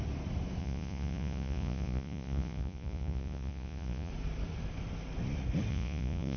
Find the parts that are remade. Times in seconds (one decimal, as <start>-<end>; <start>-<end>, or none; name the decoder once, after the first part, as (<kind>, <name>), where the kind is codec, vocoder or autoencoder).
0.6-4.1 (vocoder, Vocos); 5.7-6.4